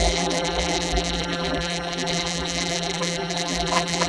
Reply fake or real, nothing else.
fake